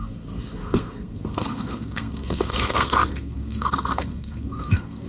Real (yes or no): no